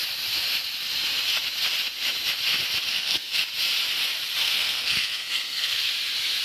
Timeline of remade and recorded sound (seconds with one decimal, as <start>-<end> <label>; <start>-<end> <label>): 0.0-2.9 recorded; 2.9-3.4 remade; 3.4-4.4 recorded; 4.4-5.9 remade; 5.9-6.4 recorded